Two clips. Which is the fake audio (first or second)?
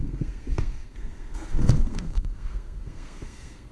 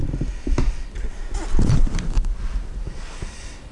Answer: first